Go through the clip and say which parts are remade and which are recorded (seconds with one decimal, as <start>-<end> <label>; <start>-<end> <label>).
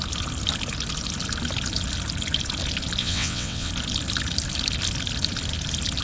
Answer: 0.0-3.0 recorded; 3.0-3.7 remade; 3.7-6.0 recorded